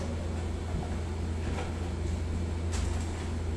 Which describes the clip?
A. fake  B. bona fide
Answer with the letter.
B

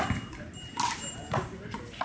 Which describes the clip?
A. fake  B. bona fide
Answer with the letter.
B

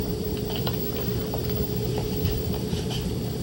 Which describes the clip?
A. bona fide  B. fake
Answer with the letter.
B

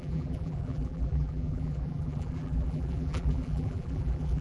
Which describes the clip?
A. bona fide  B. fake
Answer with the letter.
B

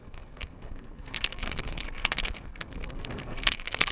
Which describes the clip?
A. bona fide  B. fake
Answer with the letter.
B